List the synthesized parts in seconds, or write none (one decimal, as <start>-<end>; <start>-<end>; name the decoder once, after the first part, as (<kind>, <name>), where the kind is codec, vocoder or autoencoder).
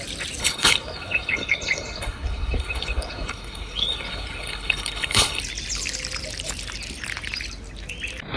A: 0.4-5.4 (codec, HILCodec)